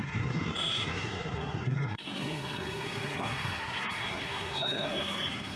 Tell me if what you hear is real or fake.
fake